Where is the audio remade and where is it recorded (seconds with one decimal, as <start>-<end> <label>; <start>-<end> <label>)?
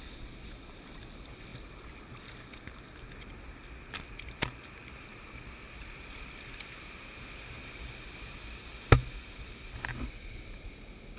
0.0-11.2 recorded